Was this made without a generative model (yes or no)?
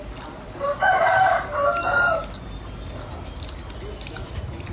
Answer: yes